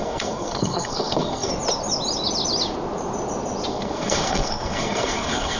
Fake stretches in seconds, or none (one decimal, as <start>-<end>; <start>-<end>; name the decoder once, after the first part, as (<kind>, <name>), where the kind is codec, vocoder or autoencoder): 0.0-1.5 (codec, SNAC); 3.7-5.6